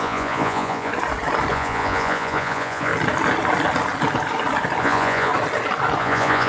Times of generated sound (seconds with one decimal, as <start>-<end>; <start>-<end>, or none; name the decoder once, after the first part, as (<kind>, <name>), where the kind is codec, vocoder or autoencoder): 0.0-0.9 (vocoder, Vocos); 1.5-2.9; 4.8-5.3; 6.0-6.5